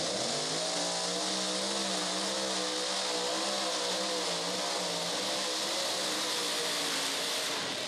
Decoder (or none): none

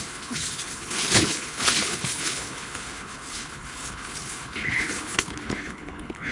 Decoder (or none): codec, HILCodec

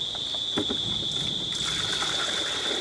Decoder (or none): none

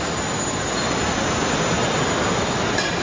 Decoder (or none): none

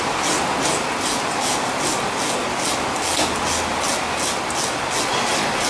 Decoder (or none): none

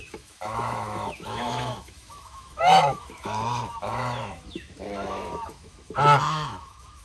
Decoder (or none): autoencoder, DAC-VAE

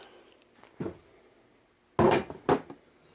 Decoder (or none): none